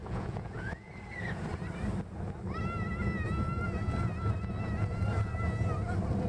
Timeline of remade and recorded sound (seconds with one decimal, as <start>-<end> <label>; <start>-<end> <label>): 0.0-0.9 remade; 0.9-6.3 recorded